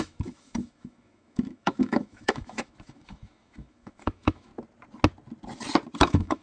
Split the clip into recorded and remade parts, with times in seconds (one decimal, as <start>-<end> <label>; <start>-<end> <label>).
0.0-4.5 remade; 4.5-6.0 recorded; 6.0-6.4 remade